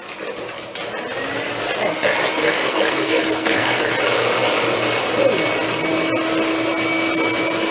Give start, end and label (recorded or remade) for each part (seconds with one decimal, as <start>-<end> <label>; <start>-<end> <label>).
0.0-2.4 recorded; 2.4-3.9 remade; 3.9-7.7 recorded